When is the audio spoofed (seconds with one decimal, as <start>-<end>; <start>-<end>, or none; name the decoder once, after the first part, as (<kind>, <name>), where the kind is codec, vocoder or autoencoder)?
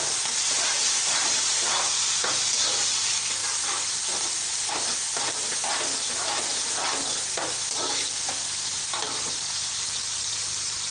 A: 3.4-4.7 (vocoder, BigVGAN v2); 8.8-10.9